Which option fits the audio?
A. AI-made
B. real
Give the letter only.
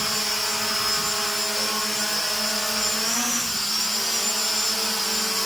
B